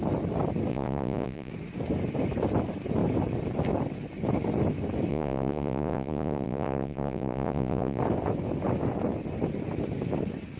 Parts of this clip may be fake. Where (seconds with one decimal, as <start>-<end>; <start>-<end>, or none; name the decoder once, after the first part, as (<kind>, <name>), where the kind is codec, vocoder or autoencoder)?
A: 0.7-1.5 (vocoder, Vocos); 5.1-8.0